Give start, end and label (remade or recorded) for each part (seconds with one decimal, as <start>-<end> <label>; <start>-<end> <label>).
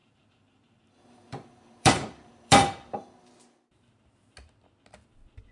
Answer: 0.0-3.3 remade; 3.3-5.5 recorded